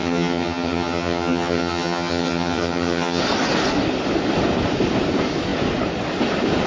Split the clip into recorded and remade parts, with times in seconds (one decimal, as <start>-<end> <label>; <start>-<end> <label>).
0.0-3.2 remade; 3.2-6.7 recorded